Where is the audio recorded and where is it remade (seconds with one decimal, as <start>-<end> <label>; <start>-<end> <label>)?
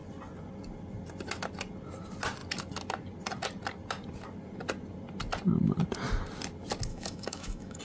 0.0-6.9 recorded; 6.9-7.8 remade